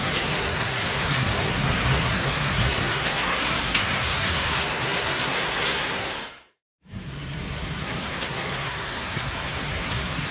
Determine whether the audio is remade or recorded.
remade